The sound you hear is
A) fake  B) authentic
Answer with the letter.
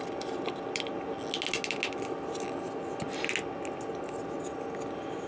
B